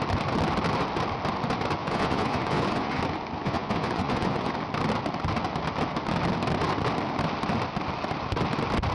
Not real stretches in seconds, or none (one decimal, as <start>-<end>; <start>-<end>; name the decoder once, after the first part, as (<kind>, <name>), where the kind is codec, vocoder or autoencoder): 1.8-3.0 (vocoder, Vocos); 3.4-4.5